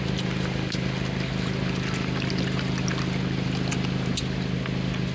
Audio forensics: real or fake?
real